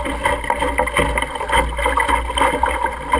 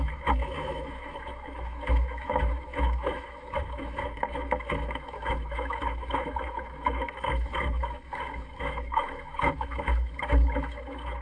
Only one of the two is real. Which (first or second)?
first